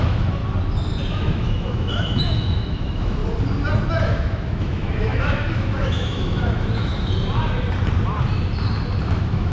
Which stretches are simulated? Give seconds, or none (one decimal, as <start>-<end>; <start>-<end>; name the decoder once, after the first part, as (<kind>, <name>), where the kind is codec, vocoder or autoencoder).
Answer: 0.0-0.4 (autoencoder, DAC-VAE); 1.1-3.2; 3.9-6.9; 9.0-9.5